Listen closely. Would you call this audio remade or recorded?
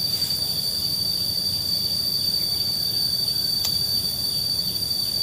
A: remade